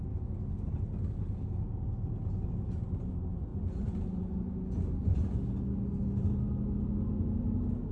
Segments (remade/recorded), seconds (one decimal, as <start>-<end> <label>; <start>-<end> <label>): 0.0-7.9 recorded